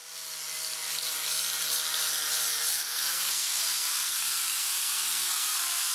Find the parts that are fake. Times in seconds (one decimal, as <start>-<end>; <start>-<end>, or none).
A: 2.7-5.9

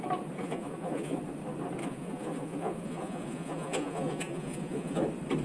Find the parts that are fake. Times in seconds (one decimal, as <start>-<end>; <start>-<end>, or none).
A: 0.4-1.2; 1.8-5.0